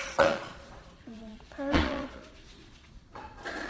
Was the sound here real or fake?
fake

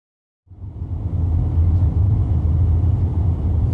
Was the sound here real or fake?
real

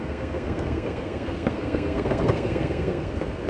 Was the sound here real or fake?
fake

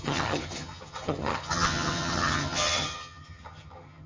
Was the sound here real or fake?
fake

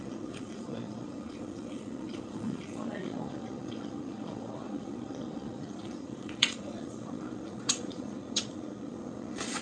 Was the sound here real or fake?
fake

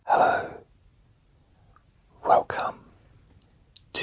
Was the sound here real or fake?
real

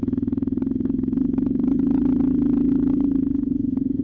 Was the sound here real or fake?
fake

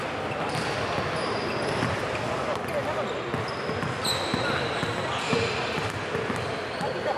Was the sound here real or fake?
real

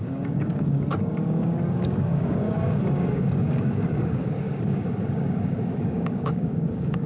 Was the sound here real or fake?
fake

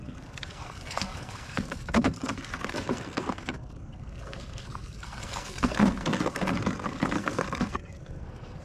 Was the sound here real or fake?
fake